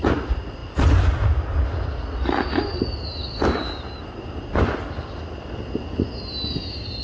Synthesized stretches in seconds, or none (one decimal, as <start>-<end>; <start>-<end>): none